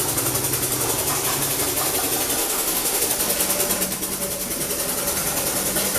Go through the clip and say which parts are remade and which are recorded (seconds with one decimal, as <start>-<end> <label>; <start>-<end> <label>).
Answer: 0.0-2.4 recorded; 2.4-3.0 remade; 3.0-6.0 recorded